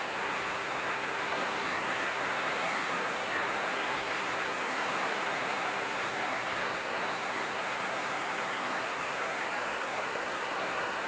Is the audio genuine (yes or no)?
no